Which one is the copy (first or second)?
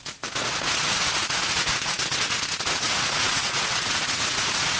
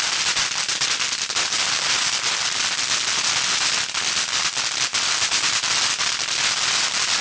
first